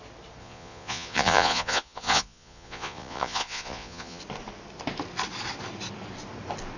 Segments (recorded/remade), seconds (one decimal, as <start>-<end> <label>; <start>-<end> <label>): 0.0-0.4 recorded; 0.4-4.2 remade; 4.2-6.8 recorded